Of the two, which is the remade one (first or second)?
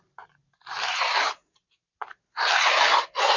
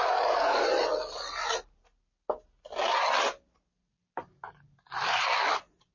first